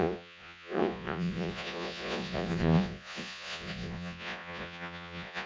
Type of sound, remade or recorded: remade